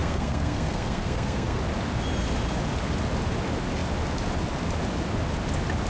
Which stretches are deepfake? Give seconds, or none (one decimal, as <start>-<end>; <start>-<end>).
0.0-1.6